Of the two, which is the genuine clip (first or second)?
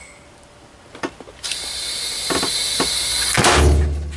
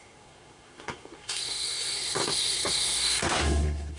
first